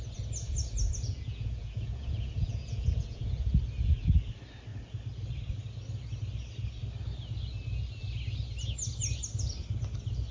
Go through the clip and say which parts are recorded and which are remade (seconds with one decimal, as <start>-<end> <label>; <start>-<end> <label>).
0.0-1.1 recorded; 1.1-3.6 remade; 3.6-10.3 recorded